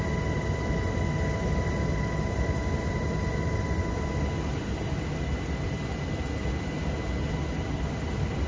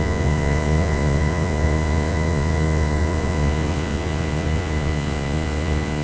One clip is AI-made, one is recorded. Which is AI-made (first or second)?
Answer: second